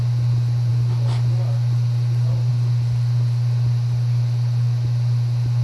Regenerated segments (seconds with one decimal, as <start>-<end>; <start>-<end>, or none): none